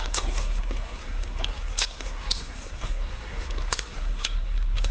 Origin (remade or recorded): remade